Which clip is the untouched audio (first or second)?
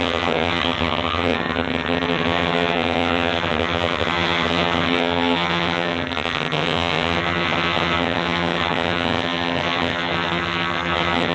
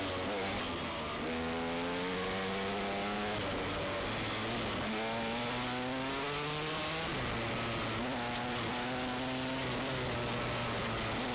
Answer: second